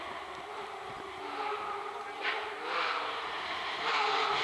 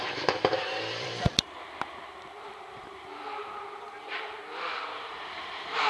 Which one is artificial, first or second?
second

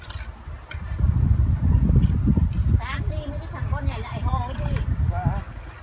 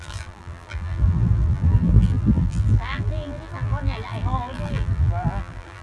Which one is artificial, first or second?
second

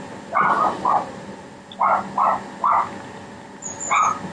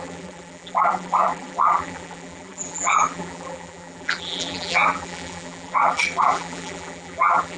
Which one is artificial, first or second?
second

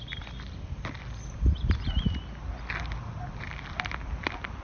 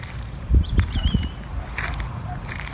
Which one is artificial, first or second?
second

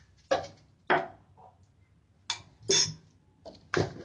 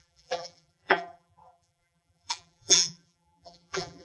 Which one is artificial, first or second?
second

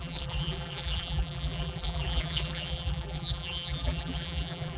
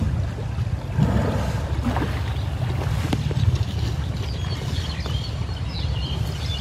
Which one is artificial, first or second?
first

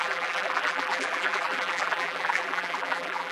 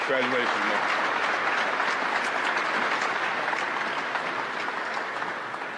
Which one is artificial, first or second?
first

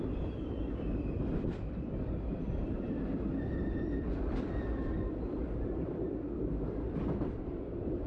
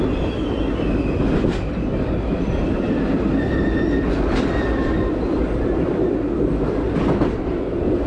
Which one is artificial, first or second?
first